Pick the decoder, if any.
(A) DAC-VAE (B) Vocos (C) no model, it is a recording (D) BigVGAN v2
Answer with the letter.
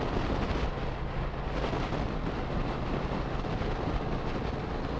C